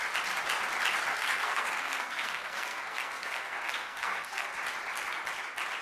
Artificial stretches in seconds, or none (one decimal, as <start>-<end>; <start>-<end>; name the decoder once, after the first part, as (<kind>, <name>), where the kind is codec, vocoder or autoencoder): 1.1-4.6 (codec, SNAC)